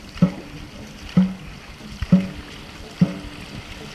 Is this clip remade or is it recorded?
recorded